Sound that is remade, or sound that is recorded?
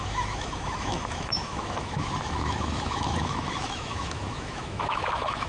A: remade